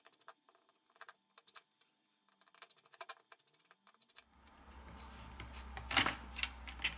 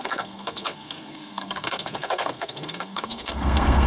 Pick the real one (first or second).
first